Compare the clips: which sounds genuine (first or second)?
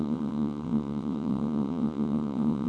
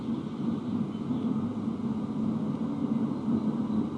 second